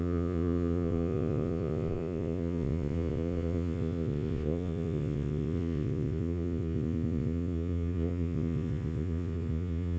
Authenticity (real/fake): fake